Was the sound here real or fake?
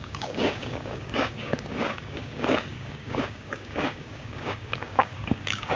fake